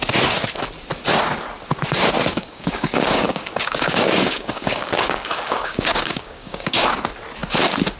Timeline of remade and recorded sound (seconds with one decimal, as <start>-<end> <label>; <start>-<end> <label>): 0.0-2.3 recorded; 2.3-6.9 remade; 6.9-8.0 recorded